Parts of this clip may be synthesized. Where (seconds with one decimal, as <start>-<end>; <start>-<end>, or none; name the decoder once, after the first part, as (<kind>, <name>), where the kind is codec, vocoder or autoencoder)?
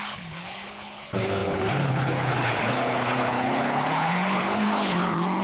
0.0-5.4 (codec, HILCodec)